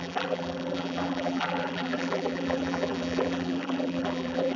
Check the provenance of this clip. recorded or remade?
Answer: remade